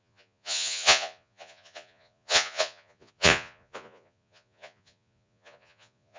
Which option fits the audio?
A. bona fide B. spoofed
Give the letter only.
B